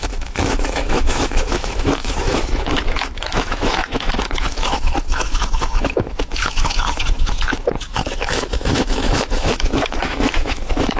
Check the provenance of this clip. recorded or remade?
remade